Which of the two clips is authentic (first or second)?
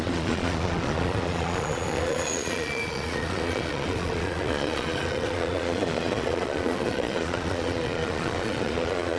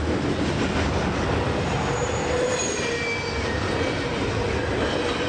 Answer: second